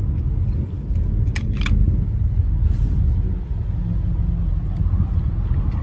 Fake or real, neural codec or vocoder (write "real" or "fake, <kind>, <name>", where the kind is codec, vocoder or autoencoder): real